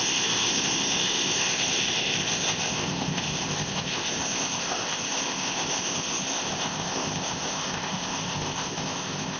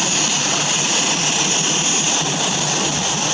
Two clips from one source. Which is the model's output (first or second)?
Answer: first